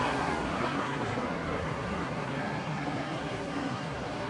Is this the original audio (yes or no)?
no